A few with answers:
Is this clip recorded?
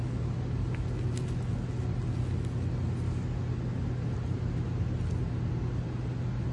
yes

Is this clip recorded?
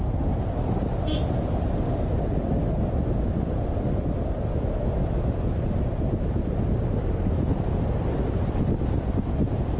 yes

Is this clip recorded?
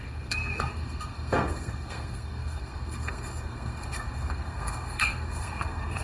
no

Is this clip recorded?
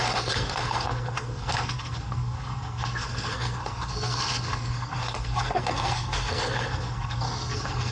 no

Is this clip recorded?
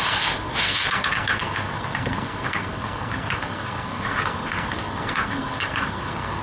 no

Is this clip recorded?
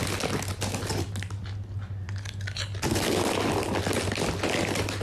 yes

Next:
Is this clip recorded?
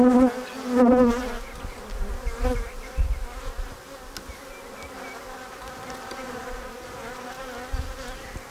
yes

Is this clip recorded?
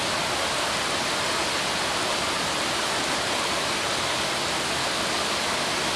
yes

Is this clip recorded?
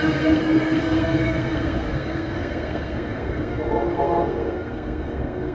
no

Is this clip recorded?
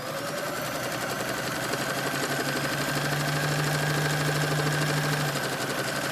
yes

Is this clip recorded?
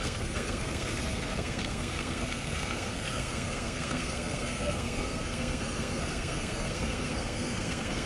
no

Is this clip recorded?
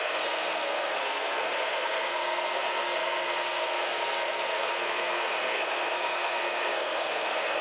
no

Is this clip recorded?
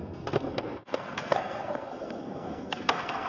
no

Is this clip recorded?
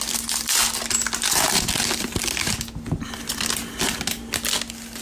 yes